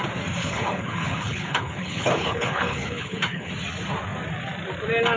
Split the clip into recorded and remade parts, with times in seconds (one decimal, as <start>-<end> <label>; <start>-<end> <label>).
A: 0.0-0.4 recorded; 0.4-3.5 remade; 3.5-5.2 recorded